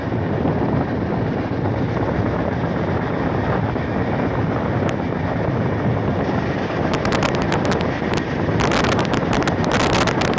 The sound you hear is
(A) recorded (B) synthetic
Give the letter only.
A